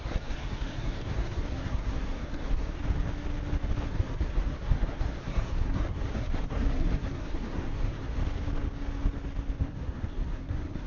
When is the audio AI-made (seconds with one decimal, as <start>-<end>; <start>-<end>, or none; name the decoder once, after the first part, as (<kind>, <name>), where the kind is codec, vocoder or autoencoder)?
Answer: 0.0-2.8 (codec, SNAC); 3.9-8.2; 9.6-10.9